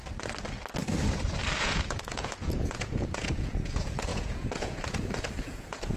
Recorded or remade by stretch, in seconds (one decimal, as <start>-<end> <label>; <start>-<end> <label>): 0.0-1.6 recorded; 1.6-6.0 remade